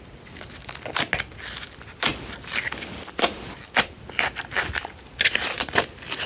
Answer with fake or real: real